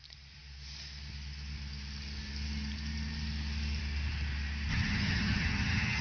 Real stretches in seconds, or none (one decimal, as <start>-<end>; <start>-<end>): 0.0-4.7